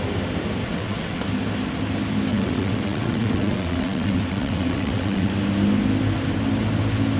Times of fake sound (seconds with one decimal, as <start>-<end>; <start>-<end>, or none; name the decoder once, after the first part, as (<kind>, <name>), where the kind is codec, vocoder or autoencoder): 0.6-1.2 (vocoder, WaveNeXt); 2.3-5.3